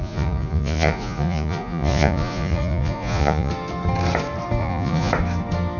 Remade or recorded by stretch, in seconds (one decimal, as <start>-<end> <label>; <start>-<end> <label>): 0.0-3.5 remade; 3.5-4.6 recorded; 4.6-5.1 remade; 5.1-5.8 recorded